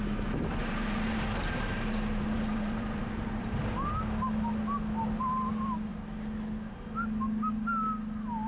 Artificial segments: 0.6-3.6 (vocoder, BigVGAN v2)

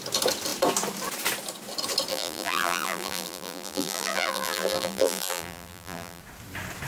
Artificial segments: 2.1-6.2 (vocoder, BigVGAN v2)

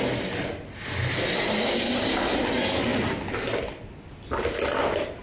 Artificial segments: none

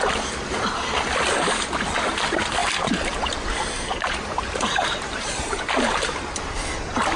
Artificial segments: 2.6-6.2 (vocoder, BigVGAN v2)

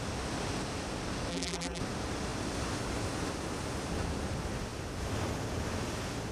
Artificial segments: 1.3-1.8 (vocoder, BigVGAN v2)

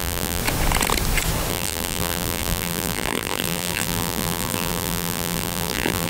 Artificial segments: 0.0-0.4 (vocoder, BigVGAN v2); 1.5-6.1